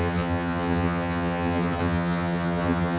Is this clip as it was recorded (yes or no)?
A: no